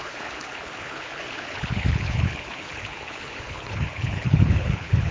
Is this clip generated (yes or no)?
yes